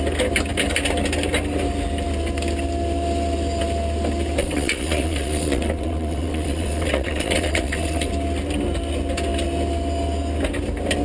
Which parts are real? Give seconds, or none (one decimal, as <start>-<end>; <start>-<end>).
0.0-4.4; 8.1-11.0